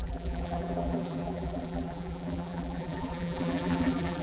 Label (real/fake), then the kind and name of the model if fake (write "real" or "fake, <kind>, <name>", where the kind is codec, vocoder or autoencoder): fake, vocoder, BigVGAN v2